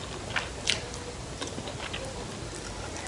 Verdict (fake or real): real